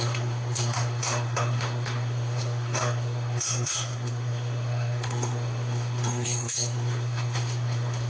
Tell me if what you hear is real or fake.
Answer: fake